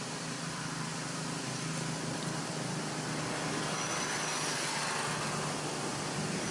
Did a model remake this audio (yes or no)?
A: no